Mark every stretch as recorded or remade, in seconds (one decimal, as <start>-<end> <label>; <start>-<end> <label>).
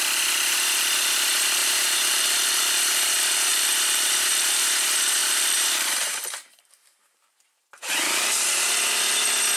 0.0-1.6 recorded; 1.6-3.1 remade; 3.1-3.5 recorded; 3.5-4.6 remade; 4.6-5.2 recorded; 5.2-9.1 remade; 9.1-9.6 recorded